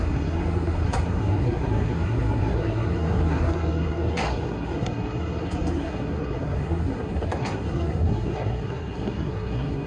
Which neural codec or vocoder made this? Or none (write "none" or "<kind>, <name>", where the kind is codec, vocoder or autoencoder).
codec, SNAC